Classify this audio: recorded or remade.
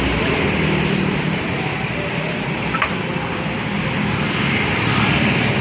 remade